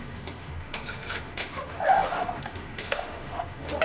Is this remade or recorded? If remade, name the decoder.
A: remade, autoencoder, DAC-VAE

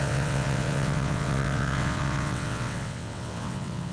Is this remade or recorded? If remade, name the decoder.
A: remade, vocoder, WaveNeXt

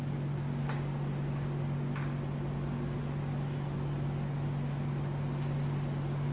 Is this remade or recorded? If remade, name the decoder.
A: recorded